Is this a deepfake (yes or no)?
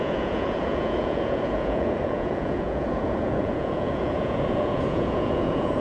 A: yes